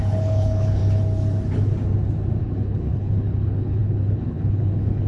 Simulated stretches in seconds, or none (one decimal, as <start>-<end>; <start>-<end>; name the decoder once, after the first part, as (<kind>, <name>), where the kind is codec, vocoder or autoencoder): 0.0-0.8 (codec, HILCodec); 2.4-5.1